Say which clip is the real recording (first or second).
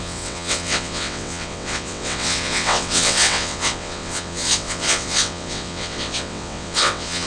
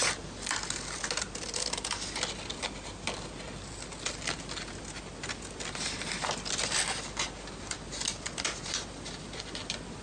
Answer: second